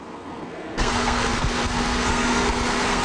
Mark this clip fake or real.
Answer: fake